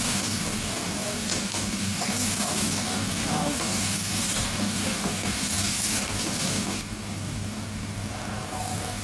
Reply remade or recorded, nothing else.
remade